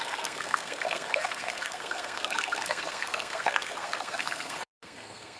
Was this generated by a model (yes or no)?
yes